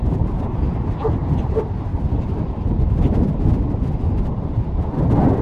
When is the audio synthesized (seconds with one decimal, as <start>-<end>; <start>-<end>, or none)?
none